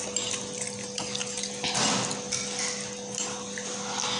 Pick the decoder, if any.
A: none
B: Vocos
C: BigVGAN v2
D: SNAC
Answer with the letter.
A